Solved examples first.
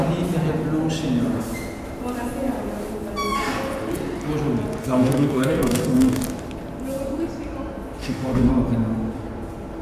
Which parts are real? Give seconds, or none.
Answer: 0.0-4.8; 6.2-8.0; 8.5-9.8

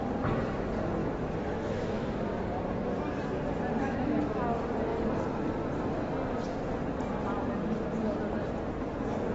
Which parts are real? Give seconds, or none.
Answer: 0.0-1.0; 1.9-3.8; 4.4-9.3

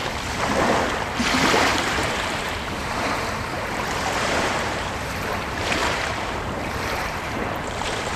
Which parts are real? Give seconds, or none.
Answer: 0.0-1.1

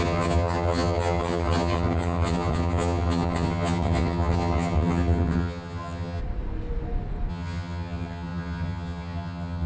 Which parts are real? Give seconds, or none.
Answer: 6.2-7.3